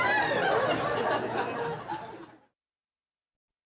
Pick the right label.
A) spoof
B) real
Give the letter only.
B